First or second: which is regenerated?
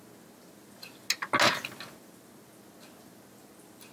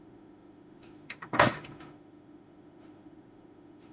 second